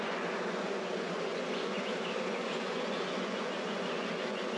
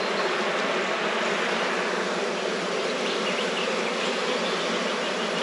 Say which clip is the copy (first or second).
first